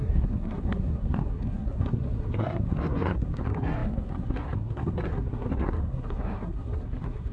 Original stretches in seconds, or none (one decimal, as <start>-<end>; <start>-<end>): none